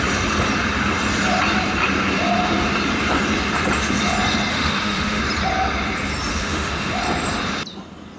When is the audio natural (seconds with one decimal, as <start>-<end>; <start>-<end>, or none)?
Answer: 0.0-4.5; 5.2-6.3; 6.9-8.2